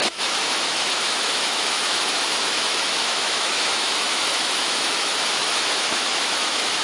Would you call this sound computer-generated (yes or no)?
yes